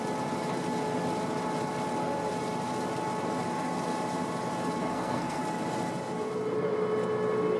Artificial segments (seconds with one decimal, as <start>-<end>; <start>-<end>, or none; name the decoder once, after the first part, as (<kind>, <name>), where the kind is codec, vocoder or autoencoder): 4.8-5.4 (codec, SNAC)